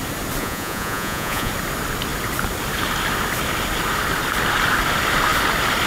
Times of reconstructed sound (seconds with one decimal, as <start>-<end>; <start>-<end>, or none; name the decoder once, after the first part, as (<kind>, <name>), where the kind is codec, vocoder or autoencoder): 0.4-1.5 (vocoder, Vocos)